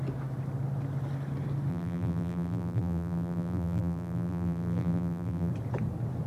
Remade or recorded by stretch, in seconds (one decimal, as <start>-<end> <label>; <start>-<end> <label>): 0.0-1.7 recorded; 1.7-5.5 remade; 5.5-6.3 recorded